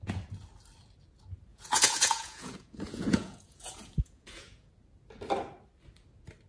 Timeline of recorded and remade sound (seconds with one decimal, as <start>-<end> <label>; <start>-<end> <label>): 0.0-1.5 recorded; 1.5-4.7 remade; 4.7-6.5 recorded